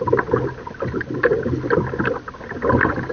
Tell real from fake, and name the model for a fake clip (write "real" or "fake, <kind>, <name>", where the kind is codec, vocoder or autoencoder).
real